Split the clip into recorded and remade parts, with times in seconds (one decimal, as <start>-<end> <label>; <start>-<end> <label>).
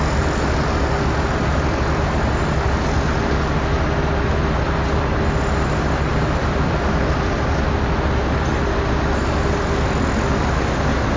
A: 0.0-6.1 recorded; 6.1-7.4 remade; 7.4-11.2 recorded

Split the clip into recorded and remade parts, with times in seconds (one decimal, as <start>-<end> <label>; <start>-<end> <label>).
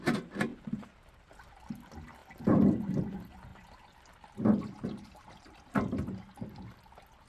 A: 0.0-0.5 recorded; 0.5-1.1 remade; 1.1-7.3 recorded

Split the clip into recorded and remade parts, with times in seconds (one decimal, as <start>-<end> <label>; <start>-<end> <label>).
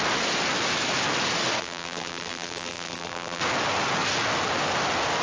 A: 0.0-1.6 recorded; 1.6-3.4 remade; 3.4-5.2 recorded